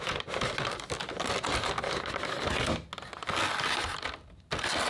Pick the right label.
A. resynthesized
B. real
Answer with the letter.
B